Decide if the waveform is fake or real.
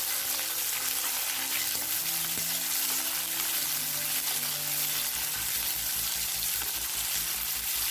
real